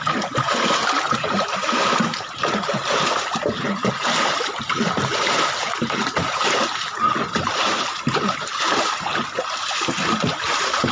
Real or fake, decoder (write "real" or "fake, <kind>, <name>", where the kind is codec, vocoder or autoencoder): fake, vocoder, BigVGAN v2